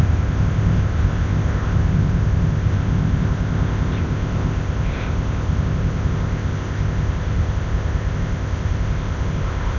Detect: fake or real fake